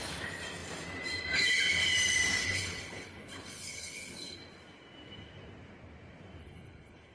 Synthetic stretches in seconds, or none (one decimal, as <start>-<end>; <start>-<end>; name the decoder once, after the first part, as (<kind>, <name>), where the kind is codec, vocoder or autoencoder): 2.4-4.4 (codec, HILCodec); 6.4-7.1